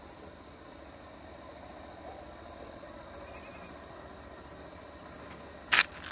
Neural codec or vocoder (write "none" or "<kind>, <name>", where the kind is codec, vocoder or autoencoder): none